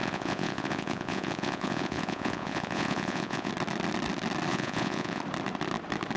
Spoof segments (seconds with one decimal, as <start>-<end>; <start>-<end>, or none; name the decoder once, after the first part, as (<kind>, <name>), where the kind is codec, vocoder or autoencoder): 0.0-3.5 (vocoder, Vocos); 4.5-5.2